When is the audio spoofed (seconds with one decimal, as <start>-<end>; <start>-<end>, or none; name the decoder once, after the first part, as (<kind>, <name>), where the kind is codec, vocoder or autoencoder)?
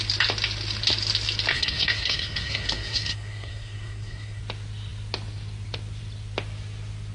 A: 1.5-4.4 (codec, SNAC)